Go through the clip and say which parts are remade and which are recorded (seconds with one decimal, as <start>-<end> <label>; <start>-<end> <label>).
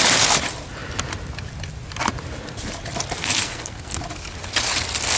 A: 0.0-3.2 recorded; 3.2-4.0 remade; 4.0-5.2 recorded